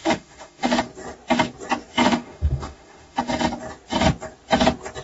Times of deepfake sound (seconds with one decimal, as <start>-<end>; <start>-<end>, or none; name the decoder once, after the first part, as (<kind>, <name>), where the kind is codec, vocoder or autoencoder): 0.0-0.8 (autoencoder, DAC-VAE); 2.0-3.3